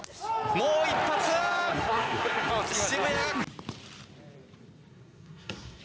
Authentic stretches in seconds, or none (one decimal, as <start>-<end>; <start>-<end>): 0.0-1.7; 2.5-4.9